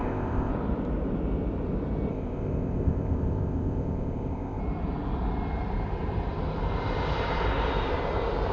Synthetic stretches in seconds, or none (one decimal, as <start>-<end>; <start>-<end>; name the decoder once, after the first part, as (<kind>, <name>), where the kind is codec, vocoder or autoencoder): 0.0-0.5 (codec, ZipCodec); 2.1-4.6